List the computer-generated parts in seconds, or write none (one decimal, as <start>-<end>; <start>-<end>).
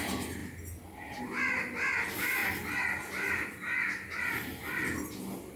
none